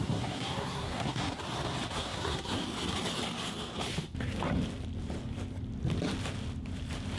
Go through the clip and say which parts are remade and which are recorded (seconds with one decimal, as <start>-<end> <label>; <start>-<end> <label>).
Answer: 0.0-1.4 remade; 1.4-1.9 recorded; 1.9-2.6 remade; 2.6-7.2 recorded